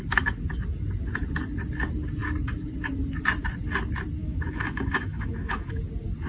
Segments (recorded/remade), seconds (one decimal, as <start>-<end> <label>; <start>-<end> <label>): 0.0-4.2 recorded; 4.2-5.7 remade; 5.7-6.3 recorded